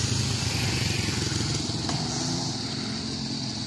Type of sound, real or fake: real